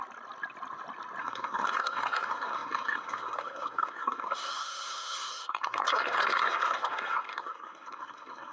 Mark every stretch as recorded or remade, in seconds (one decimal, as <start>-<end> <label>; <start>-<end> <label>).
0.0-1.2 recorded; 1.2-8.5 remade